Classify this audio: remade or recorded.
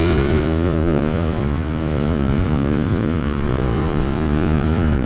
remade